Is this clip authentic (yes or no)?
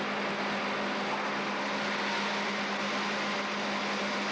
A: yes